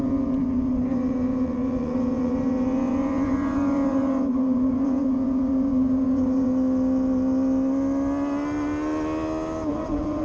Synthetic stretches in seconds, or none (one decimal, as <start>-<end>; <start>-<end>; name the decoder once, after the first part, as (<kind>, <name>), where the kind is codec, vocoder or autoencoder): 0.0-6.5 (vocoder, Vocos); 9.7-10.2